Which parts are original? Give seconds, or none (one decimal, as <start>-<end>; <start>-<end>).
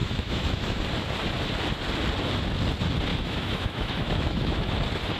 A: 0.8-3.1; 4.7-5.2